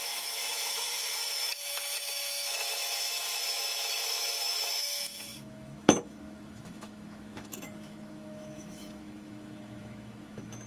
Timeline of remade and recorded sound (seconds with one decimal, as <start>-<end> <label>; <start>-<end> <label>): 0.0-10.7 remade